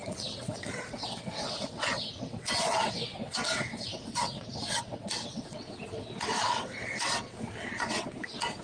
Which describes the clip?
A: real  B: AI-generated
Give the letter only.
B